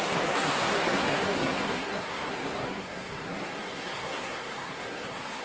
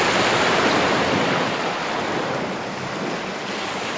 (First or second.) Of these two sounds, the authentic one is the second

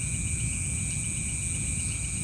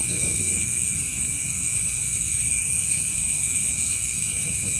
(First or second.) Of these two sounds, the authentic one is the first